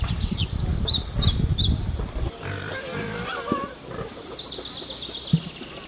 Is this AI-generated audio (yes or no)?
yes